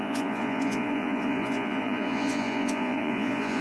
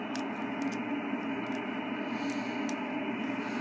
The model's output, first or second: first